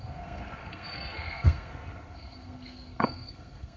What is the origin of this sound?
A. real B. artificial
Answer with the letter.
B